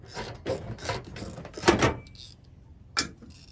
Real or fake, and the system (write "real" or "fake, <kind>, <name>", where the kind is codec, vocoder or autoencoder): real